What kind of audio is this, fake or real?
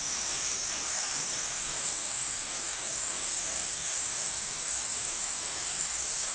fake